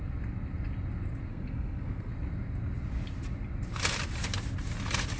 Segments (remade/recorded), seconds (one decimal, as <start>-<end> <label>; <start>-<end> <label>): 0.0-1.3 recorded; 1.3-2.1 remade; 2.1-5.2 recorded

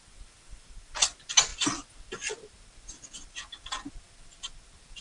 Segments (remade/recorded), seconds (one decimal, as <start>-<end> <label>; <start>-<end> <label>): 0.0-5.0 recorded

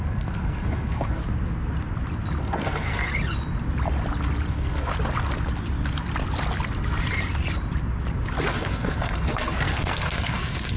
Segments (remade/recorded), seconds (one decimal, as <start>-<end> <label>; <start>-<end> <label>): 0.0-1.2 remade; 1.2-2.4 recorded; 2.4-3.0 remade; 3.0-4.5 recorded; 4.5-4.9 remade; 4.9-8.5 recorded; 8.5-10.8 remade